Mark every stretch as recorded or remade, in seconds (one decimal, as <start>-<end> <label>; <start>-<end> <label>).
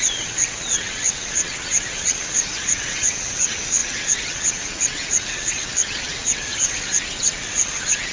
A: 0.0-8.1 remade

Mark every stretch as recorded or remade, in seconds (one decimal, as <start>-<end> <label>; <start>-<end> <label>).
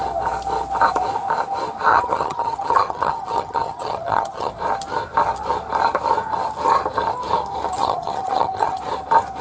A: 0.0-1.9 recorded; 1.9-4.5 remade; 4.5-7.8 recorded; 7.8-8.8 remade; 8.8-9.4 recorded